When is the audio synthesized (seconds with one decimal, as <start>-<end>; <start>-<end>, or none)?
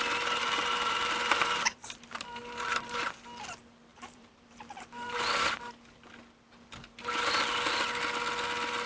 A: 0.4-2.7; 3.9-5.2